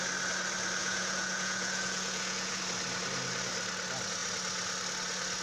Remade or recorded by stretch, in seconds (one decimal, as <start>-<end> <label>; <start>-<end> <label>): 0.0-0.8 recorded; 0.8-2.6 remade; 2.6-5.4 recorded